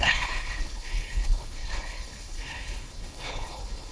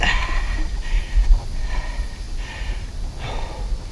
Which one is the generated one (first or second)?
first